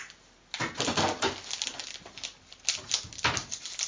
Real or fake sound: real